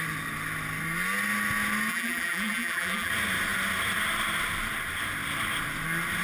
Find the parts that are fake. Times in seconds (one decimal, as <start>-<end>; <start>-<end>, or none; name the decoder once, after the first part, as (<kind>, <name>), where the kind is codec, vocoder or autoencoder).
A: 1.9-3.1 (vocoder, BigVGAN v2)